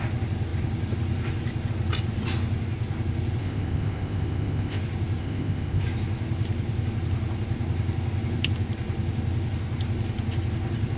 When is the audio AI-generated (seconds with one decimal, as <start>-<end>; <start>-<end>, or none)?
3.4-4.8; 5.2-5.8